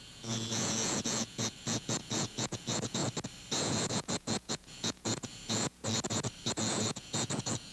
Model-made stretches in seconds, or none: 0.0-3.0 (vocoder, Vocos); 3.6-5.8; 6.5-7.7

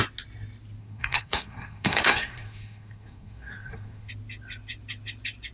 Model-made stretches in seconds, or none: 0.8-4.1 (codec, SNAC)

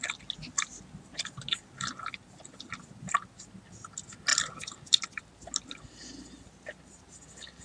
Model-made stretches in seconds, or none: 4.3-5.2 (vocoder, BigVGAN v2)

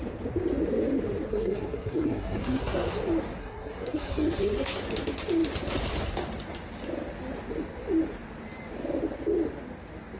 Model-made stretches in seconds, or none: 1.3-3.0 (codec, SNAC); 3.4-4.8

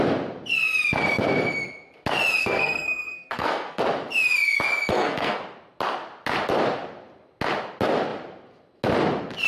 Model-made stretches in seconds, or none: 2.4-3.8 (codec, SNAC); 4.9-5.4

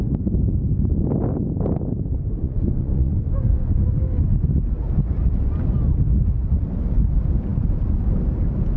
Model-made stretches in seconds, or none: 2.4-3.8 (vocoder, Vocos)

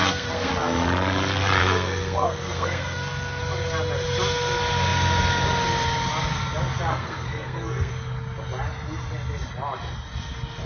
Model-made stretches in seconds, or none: 0.0-0.5 (codec, SNAC); 1.6-3.4; 6.9-7.9